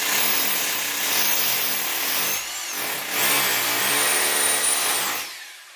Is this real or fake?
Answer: real